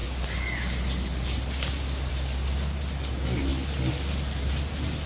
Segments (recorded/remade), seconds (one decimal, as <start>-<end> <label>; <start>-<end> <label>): 0.0-5.1 recorded